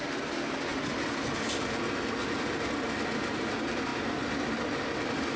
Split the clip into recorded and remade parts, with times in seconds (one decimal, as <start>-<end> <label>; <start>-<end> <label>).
0.0-5.4 recorded